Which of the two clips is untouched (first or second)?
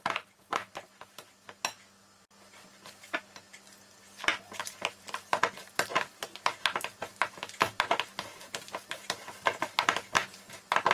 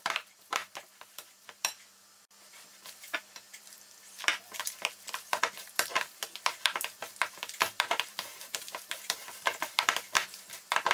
first